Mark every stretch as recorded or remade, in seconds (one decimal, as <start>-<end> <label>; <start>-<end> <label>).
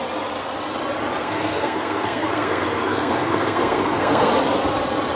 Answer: 0.0-1.2 recorded; 1.2-4.3 remade; 4.3-5.2 recorded